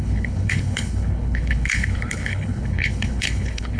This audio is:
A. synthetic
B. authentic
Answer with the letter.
A